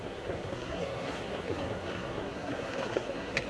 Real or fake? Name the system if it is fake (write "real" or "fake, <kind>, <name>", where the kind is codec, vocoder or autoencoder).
fake, codec, SNAC